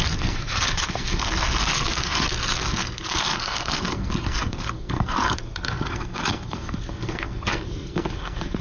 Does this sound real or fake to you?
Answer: fake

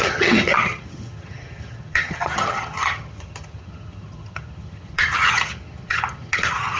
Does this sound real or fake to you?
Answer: fake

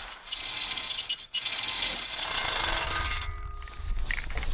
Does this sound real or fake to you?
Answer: real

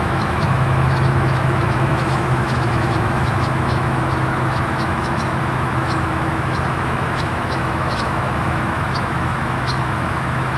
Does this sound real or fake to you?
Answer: fake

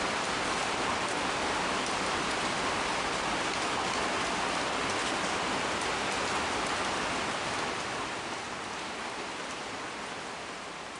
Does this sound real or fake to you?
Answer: real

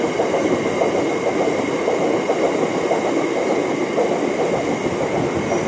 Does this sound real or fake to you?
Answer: real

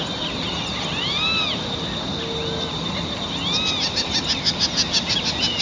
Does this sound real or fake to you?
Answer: real